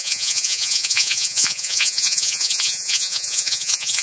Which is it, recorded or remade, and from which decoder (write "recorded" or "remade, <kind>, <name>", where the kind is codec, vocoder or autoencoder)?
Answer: remade, vocoder, Vocos